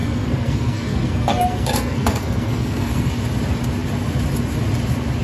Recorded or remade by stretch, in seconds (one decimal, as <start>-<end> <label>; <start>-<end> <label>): 0.0-3.1 remade; 3.1-5.2 recorded

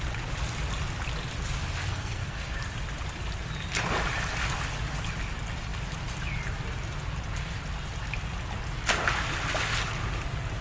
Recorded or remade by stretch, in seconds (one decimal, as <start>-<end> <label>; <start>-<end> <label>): 0.0-1.9 recorded; 1.9-2.6 remade; 2.6-10.6 recorded

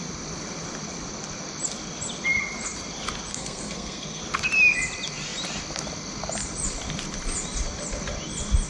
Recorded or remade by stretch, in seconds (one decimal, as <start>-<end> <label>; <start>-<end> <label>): 0.0-3.3 recorded; 3.3-4.2 remade; 4.2-8.7 recorded

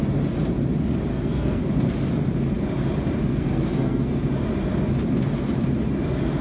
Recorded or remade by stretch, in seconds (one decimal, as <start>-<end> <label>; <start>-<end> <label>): 0.0-1.1 recorded; 1.1-1.7 remade; 1.7-3.3 recorded; 3.3-4.2 remade; 4.2-6.4 recorded

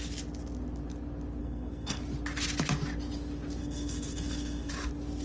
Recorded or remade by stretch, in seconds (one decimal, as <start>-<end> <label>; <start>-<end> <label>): 0.0-1.4 recorded; 1.4-2.0 remade; 2.0-3.6 recorded; 3.6-4.7 remade; 4.7-5.2 recorded

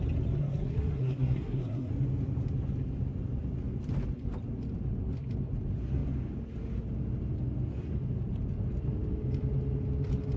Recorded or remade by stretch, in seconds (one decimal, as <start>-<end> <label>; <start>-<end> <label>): 0.0-0.4 recorded; 0.4-1.9 remade; 1.9-10.4 recorded

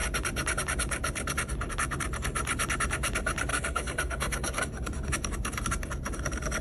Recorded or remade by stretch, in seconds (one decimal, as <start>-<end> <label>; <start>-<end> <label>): 0.0-3.5 recorded; 3.5-4.6 remade; 4.6-6.6 recorded

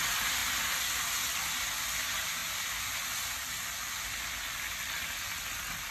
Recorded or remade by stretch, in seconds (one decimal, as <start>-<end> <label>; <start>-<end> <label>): 0.0-5.9 recorded